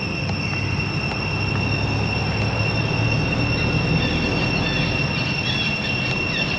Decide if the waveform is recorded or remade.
recorded